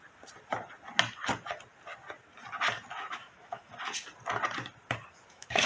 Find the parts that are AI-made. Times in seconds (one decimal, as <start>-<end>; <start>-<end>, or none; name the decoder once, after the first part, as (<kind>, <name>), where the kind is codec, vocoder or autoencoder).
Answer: 3.1-3.7 (autoencoder, DAC-VAE); 5.3-5.7